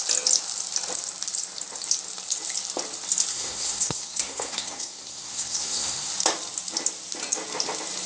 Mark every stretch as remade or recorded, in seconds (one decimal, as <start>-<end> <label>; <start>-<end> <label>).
0.0-3.3 recorded; 3.3-6.1 remade; 6.1-8.1 recorded